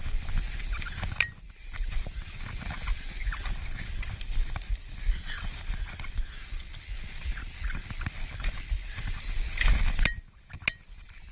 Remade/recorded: recorded